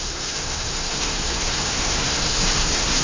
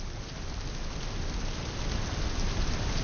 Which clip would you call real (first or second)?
second